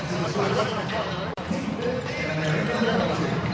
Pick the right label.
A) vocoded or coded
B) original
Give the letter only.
A